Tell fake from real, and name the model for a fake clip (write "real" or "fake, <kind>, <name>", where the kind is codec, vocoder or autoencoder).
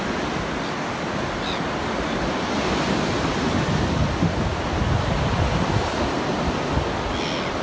real